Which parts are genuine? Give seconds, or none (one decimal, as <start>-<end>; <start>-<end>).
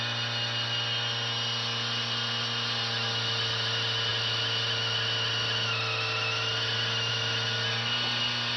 0.0-8.6